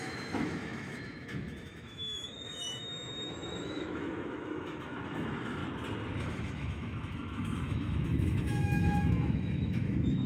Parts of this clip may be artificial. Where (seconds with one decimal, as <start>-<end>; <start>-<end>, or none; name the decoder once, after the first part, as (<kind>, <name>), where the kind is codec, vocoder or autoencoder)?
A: 0.0-5.6 (autoencoder, DAC-VAE); 6.2-10.3